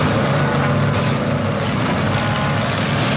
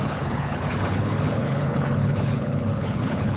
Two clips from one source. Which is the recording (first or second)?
first